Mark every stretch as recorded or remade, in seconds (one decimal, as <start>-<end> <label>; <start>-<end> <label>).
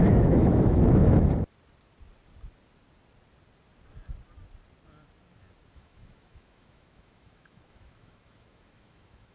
0.0-1.0 remade; 1.0-5.7 recorded; 5.7-9.3 remade